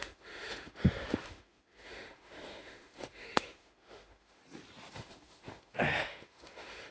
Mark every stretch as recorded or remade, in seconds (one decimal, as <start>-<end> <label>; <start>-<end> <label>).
0.0-4.4 remade; 4.4-4.9 recorded; 4.9-6.9 remade